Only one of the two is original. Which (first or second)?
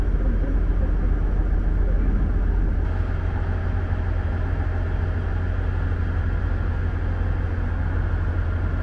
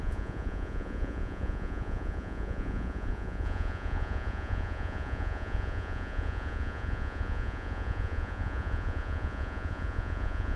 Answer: first